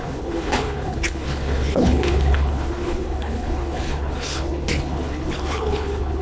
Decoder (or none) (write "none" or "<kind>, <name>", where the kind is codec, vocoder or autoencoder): codec, HILCodec